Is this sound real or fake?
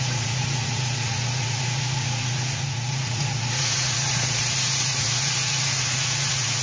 fake